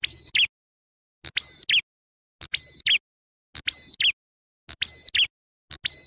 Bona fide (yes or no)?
yes